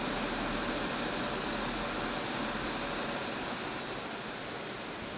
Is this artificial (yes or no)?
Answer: no